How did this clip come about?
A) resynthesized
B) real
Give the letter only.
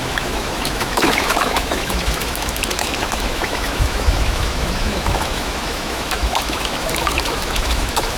A